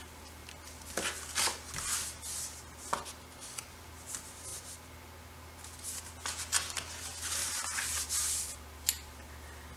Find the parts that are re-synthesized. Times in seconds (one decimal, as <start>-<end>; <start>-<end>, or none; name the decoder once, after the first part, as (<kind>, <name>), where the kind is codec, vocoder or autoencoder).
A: none